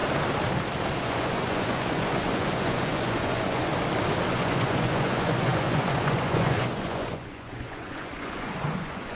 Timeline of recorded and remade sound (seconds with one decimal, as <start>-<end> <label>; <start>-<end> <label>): 0.0-1.0 recorded; 1.0-3.7 remade; 3.7-4.3 recorded; 4.3-9.2 remade